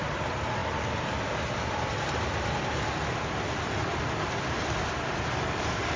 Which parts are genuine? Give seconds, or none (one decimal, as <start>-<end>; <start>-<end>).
0.0-6.0